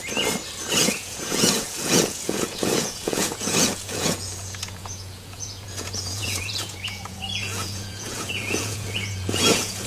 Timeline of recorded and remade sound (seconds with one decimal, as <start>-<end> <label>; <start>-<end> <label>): 0.0-0.8 recorded; 0.8-9.9 remade